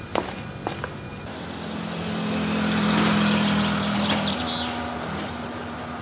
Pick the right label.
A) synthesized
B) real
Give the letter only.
B